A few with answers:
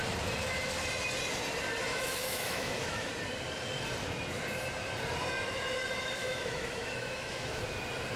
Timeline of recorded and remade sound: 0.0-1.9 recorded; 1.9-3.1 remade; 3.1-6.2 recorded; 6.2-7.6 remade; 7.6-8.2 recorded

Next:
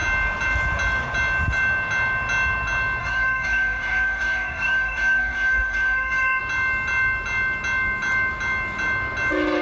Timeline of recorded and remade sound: 0.0-3.0 recorded; 3.0-6.4 remade; 6.4-9.6 recorded

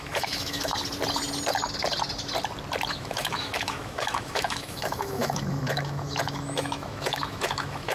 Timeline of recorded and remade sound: 0.0-0.7 remade; 0.7-2.9 recorded; 2.9-7.9 remade

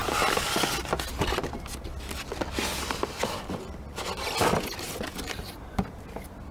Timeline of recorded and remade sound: 0.0-6.5 recorded

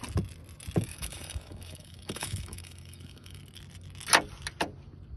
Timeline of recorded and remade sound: 0.0-0.9 recorded; 0.9-3.4 remade; 3.4-5.2 recorded